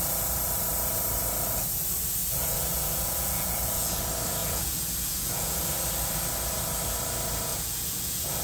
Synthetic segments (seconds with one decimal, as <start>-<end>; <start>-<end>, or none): 2.2-4.0; 4.4-5.6; 7.5-8.4